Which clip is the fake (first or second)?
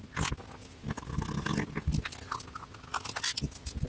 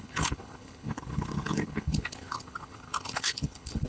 second